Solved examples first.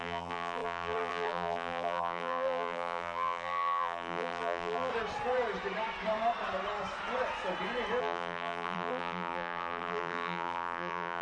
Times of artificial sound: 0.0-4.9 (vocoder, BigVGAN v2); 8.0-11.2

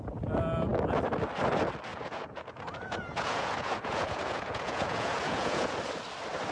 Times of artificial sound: 1.9-5.8 (vocoder, Vocos)

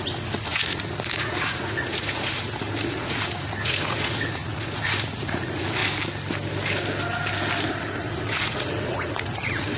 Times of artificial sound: 0.0-5.8 (vocoder, Vocos); 7.7-9.8

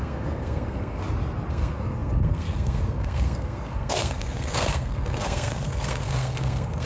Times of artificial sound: 0.0-1.0 (codec, SNAC); 1.5-6.9